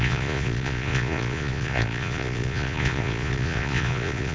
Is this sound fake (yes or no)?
yes